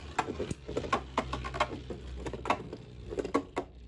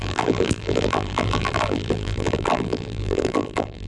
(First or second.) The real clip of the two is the first